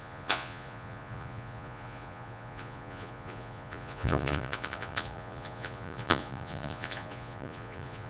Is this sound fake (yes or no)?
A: yes